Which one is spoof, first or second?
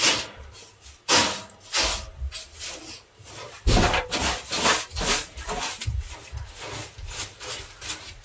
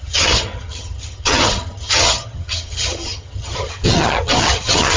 second